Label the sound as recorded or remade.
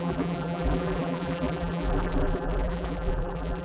remade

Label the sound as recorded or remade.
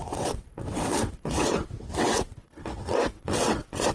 remade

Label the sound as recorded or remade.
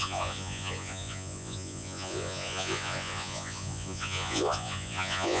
remade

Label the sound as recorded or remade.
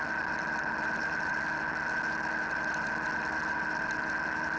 recorded